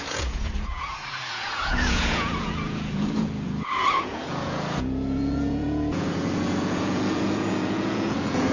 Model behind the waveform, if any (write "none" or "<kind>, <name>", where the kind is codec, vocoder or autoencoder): vocoder, Vocos